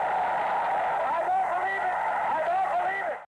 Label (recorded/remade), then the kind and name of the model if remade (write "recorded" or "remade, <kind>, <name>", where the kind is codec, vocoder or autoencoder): recorded